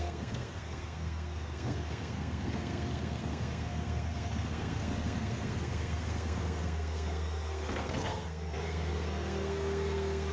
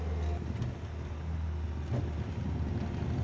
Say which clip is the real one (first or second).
second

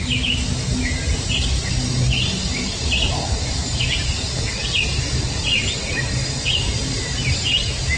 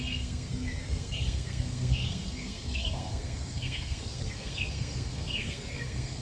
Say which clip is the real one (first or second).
first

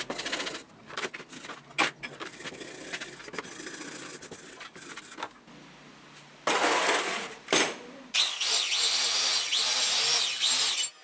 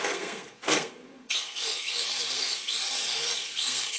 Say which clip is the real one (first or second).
first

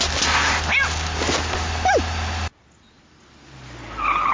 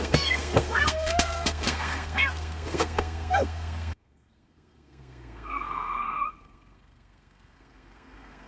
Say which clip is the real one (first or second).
first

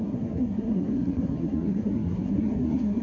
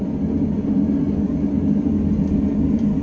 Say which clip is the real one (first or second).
second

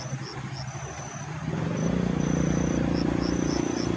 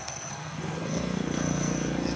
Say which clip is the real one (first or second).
first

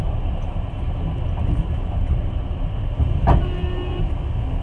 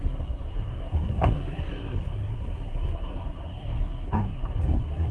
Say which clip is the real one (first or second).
first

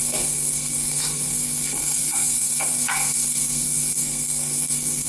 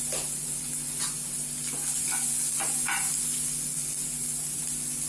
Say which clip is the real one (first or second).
second